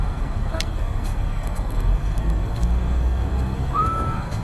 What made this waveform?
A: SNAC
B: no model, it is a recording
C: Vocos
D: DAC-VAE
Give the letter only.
A